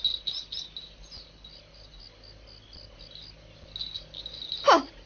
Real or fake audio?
real